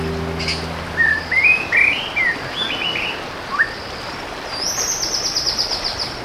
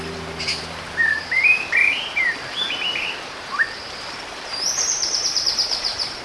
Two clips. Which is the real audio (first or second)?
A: first